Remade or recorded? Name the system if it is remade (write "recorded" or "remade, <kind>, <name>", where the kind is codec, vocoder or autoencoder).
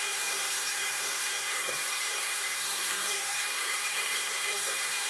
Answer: remade, codec, SNAC